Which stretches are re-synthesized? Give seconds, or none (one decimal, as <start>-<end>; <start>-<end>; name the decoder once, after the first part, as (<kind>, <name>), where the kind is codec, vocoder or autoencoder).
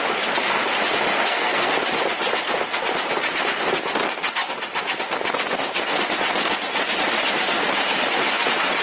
1.1-1.7 (codec, SNAC)